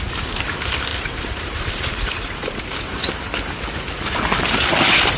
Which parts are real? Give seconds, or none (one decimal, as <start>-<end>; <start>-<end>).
0.0-0.9; 3.1-5.2